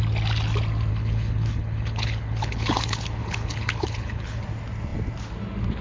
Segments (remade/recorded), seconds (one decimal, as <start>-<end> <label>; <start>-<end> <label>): 0.0-0.9 recorded; 0.9-4.4 remade; 4.4-5.8 recorded